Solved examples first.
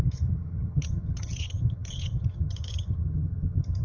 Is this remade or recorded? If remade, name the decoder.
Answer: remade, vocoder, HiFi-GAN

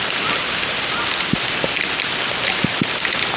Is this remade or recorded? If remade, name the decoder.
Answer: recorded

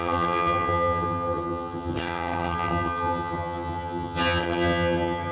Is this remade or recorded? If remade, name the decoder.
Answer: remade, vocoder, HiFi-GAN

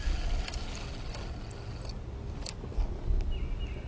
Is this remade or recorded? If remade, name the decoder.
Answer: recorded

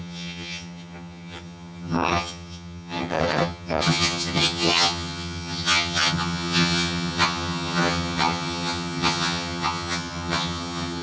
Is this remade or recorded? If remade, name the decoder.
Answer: remade, vocoder, HiFi-GAN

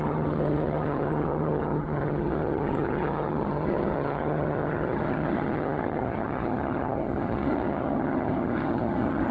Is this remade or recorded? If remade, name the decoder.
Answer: remade, vocoder, HiFi-GAN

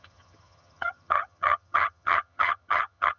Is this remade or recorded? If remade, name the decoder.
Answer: remade, vocoder, HiFi-GAN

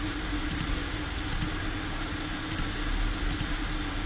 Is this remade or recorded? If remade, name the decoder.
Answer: recorded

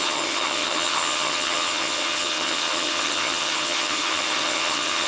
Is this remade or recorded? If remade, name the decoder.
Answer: remade, vocoder, HiFi-GAN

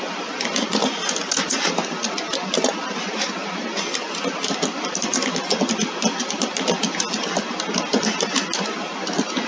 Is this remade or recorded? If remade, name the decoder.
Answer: recorded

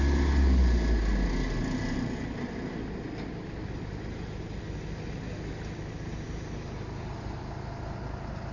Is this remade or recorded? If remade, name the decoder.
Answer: recorded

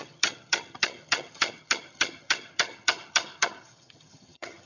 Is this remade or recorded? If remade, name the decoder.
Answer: remade, vocoder, HiFi-GAN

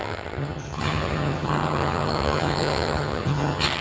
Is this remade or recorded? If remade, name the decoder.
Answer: remade, vocoder, HiFi-GAN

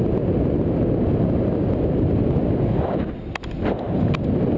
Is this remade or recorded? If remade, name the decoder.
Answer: recorded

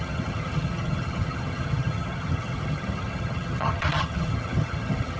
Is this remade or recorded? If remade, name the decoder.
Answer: remade, vocoder, HiFi-GAN